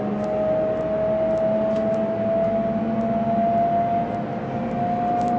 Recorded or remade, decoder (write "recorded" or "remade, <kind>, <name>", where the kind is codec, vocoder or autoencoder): recorded